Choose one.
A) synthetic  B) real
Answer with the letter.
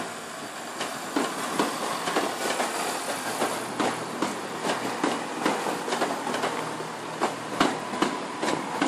B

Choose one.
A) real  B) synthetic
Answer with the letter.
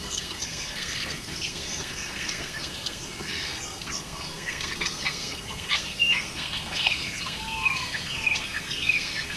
B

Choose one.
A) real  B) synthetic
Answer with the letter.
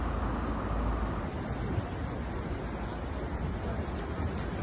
A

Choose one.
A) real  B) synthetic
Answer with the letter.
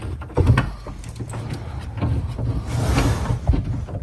A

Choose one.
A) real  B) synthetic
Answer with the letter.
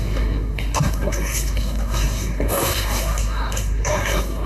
B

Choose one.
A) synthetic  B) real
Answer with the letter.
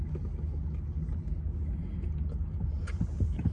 B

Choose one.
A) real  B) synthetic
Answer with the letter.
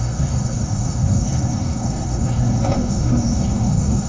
B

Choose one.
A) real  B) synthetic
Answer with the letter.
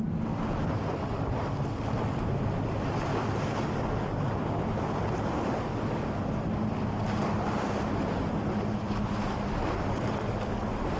A